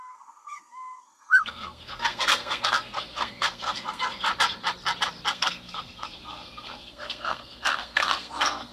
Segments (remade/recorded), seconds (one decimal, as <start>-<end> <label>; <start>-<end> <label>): 0.0-4.3 remade; 4.3-5.3 recorded; 5.3-8.7 remade